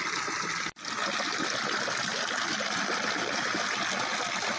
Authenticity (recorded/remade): recorded